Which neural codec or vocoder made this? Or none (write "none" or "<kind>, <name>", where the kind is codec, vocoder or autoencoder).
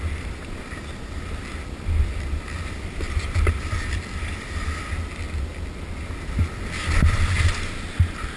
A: none